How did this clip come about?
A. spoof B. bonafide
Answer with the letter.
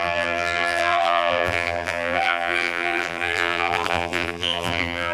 A